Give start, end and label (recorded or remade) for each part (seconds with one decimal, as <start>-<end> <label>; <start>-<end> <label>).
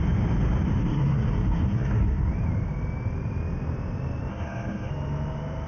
0.0-0.8 recorded; 0.8-2.3 remade; 2.3-4.3 recorded; 4.3-4.9 remade; 4.9-5.7 recorded